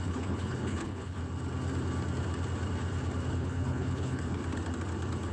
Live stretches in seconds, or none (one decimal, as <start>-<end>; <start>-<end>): 1.2-3.3; 4.4-5.3